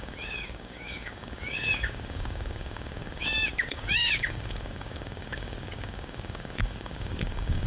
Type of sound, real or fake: fake